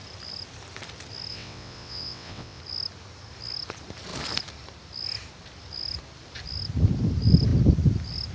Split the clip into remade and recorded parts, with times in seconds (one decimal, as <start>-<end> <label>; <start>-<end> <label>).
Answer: 0.0-1.3 recorded; 1.3-2.6 remade; 2.6-8.3 recorded